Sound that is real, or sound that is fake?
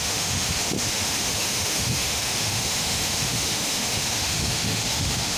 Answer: fake